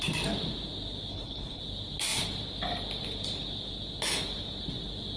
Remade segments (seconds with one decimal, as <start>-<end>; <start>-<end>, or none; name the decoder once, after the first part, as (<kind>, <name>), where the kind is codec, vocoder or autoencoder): 1.1-1.6 (codec, HILCodec)